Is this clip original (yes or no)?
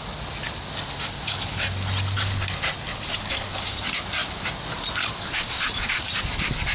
yes